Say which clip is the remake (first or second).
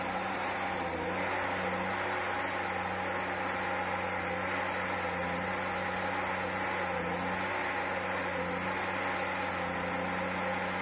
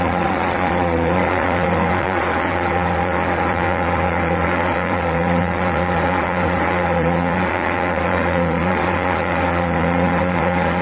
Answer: second